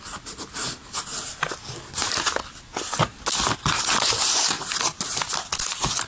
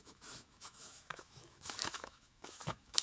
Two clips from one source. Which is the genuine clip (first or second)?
first